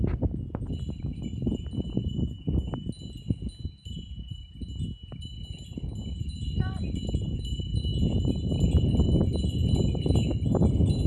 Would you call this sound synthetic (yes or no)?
no